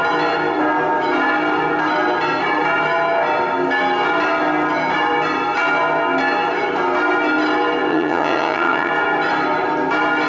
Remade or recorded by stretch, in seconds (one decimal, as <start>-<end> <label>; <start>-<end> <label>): 0.0-7.9 recorded; 7.9-8.9 remade; 8.9-10.3 recorded